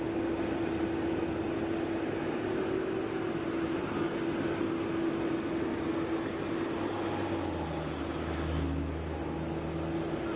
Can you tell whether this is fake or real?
real